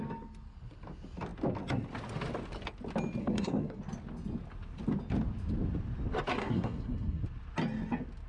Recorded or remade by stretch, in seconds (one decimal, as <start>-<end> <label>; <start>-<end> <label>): 0.0-3.2 recorded; 3.2-3.8 remade; 3.8-6.3 recorded; 6.3-7.2 remade; 7.2-8.3 recorded